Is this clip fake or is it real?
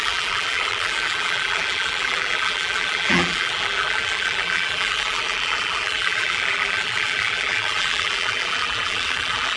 fake